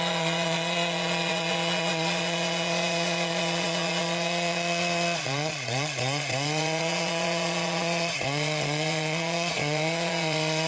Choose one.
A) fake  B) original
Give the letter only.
A